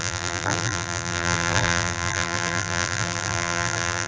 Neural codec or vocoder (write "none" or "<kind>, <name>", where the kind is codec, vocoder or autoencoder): vocoder, BigVGAN v2